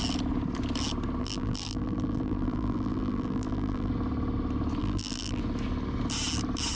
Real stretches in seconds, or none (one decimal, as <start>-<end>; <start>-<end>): 0.0-1.2; 3.9-4.8; 5.4-6.7